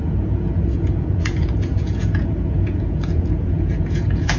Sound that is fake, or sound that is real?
fake